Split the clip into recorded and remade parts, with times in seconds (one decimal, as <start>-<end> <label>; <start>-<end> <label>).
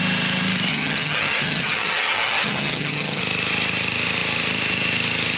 0.0-0.7 recorded; 0.7-3.2 remade; 3.2-5.4 recorded